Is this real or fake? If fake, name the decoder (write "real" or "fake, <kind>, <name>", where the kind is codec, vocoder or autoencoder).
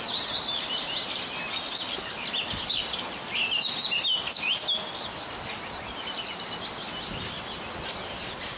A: real